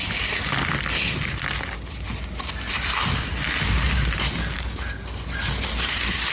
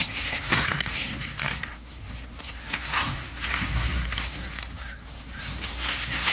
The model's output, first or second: second